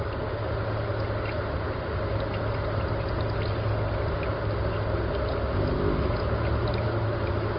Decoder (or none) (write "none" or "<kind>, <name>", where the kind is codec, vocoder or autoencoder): none